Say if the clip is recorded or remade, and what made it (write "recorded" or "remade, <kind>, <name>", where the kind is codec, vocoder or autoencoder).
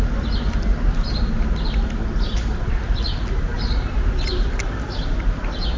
recorded